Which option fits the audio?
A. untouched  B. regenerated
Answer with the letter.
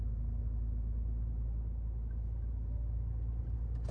A